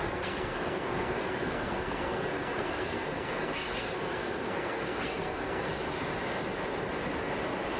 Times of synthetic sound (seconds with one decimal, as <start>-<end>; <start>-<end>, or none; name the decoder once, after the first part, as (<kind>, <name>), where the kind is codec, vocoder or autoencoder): 0.0-5.7 (codec, SNAC)